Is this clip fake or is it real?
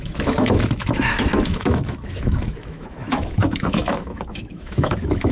fake